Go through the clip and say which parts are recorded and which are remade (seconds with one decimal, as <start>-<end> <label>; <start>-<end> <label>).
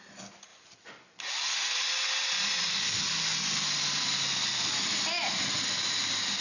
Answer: 0.0-6.4 recorded